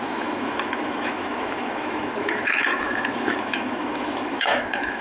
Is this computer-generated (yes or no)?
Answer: yes